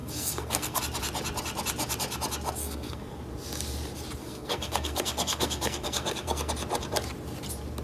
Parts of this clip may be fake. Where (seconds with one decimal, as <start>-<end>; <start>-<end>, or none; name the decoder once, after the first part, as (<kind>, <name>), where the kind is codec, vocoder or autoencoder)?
0.0-0.8 (codec, SNAC); 2.6-3.2; 4.2-6.5